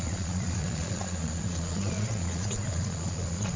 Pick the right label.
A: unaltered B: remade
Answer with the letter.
B